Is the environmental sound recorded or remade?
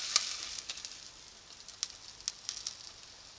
recorded